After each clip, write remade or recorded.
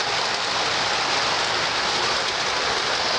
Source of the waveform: recorded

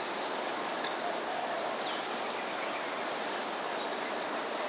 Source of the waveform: recorded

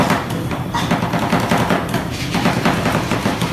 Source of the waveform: remade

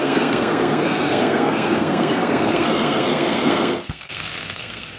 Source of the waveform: remade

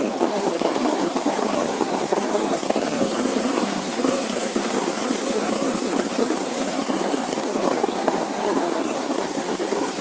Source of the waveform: remade